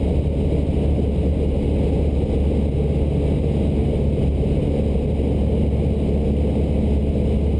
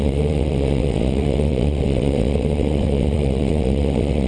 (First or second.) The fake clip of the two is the second